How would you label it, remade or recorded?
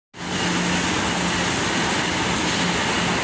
recorded